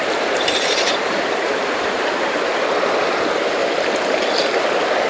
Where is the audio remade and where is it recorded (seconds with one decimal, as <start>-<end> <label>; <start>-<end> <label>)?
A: 0.0-3.6 remade; 3.6-5.1 recorded